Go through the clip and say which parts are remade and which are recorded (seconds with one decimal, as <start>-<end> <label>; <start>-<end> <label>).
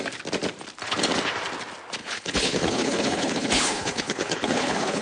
0.0-2.0 recorded; 2.0-5.0 remade